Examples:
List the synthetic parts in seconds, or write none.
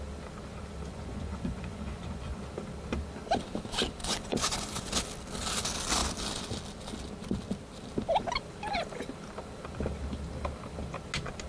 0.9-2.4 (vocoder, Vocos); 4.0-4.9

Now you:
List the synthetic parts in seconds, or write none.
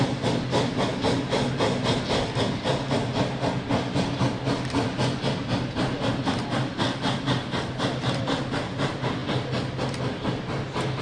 none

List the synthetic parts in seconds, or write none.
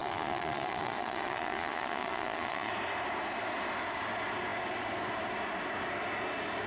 0.0-2.7 (vocoder, Vocos)